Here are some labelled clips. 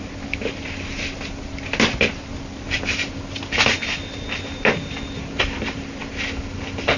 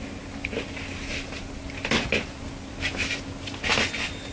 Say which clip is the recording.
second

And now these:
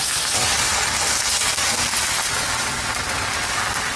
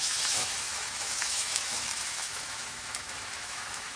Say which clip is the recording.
first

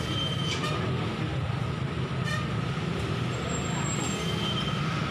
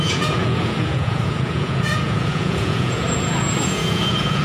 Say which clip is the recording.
first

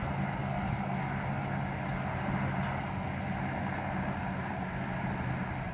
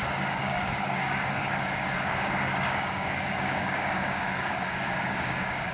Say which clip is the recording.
first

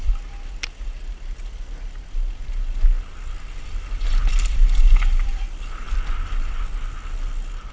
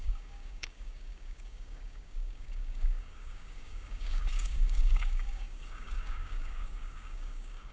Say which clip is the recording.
first